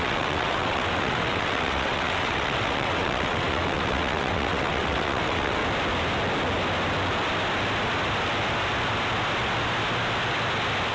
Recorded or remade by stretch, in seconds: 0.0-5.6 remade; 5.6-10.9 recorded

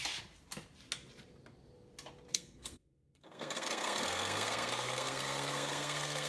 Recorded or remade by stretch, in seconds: 0.0-2.3 recorded; 2.3-6.3 remade

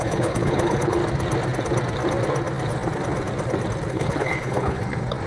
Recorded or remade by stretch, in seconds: 0.0-1.0 remade; 1.0-3.9 recorded; 3.9-4.8 remade; 4.8-5.3 recorded

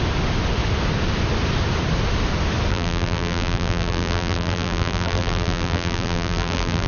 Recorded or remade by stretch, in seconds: 0.0-2.7 recorded; 2.7-6.9 remade

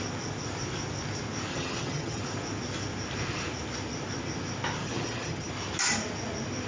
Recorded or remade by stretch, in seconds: 0.0-1.5 recorded; 1.5-2.2 remade; 2.2-4.8 recorded; 4.8-5.5 remade; 5.5-6.7 recorded